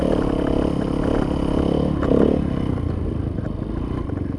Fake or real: real